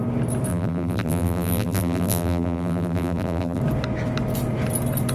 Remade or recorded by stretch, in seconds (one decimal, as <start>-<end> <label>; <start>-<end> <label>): 0.0-0.5 recorded; 0.5-3.6 remade; 3.6-5.1 recorded